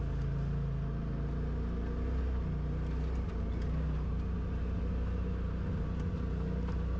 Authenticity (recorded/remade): recorded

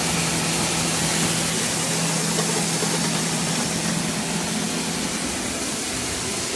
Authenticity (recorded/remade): recorded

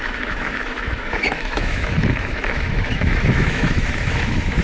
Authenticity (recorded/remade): remade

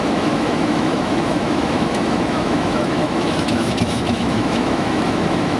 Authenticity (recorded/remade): remade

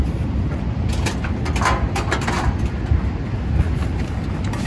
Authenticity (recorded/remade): recorded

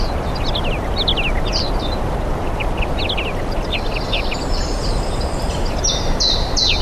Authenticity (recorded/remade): recorded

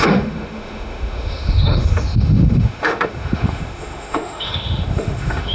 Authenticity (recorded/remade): remade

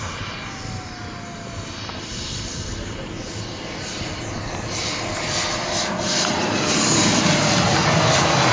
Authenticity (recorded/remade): recorded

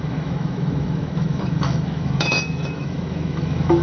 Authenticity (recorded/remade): remade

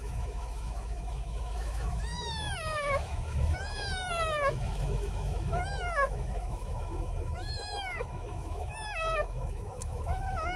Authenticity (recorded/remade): remade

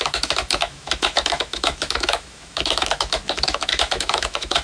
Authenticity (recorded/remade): remade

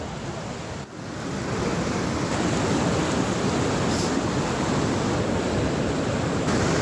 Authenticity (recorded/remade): recorded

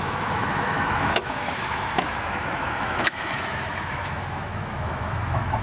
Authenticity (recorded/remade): remade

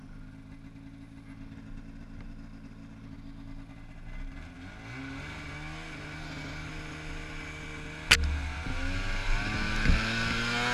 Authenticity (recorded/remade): recorded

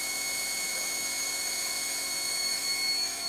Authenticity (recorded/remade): remade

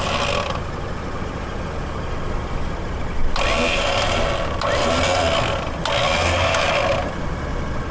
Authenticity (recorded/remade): recorded